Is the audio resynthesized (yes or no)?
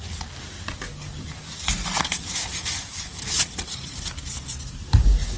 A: no